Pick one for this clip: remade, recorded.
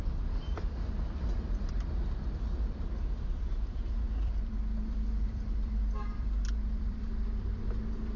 remade